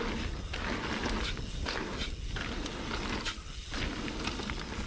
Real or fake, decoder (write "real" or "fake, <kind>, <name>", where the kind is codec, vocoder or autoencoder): real